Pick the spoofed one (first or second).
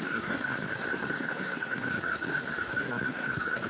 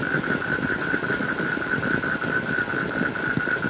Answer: first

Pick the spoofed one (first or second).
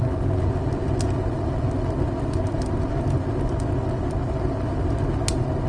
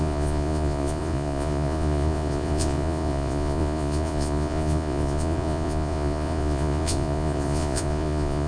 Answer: second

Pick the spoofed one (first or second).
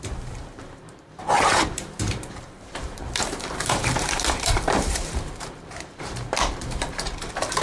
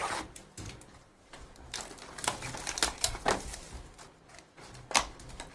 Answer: first